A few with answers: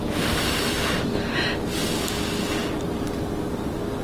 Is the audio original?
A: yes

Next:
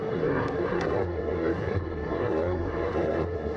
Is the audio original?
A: no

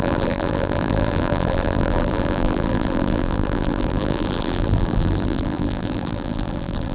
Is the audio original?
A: no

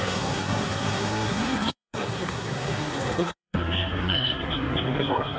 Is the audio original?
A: no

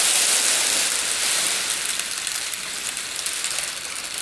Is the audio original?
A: yes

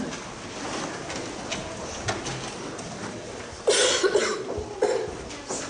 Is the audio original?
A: yes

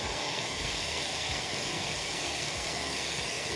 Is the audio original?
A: no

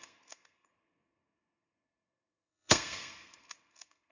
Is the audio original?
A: no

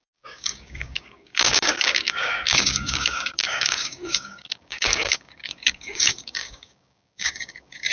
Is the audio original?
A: no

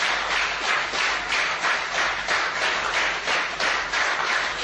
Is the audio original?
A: yes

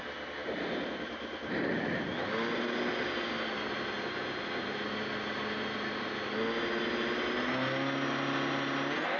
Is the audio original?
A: yes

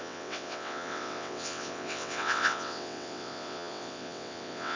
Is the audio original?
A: no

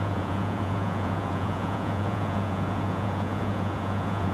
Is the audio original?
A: no